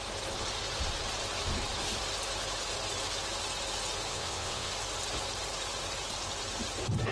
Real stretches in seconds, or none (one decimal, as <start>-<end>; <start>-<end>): 0.0-4.1; 4.7-7.1